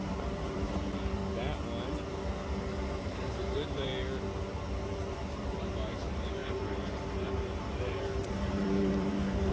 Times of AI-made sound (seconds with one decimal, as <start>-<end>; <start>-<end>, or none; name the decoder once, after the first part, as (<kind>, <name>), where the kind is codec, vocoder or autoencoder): 0.0-1.2 (vocoder, BigVGAN v2); 2.6-3.9; 4.8-9.5